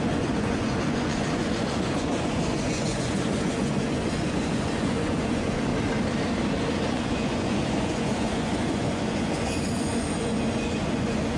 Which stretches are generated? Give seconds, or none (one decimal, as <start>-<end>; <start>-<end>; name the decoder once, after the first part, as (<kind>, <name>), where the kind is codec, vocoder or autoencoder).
0.0-5.7 (vocoder, Vocos); 6.7-11.4